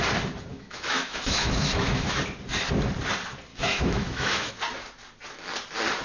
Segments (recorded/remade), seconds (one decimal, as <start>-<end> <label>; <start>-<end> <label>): 0.0-0.5 recorded; 0.5-2.2 remade; 2.2-3.5 recorded; 3.5-4.5 remade; 4.5-6.0 recorded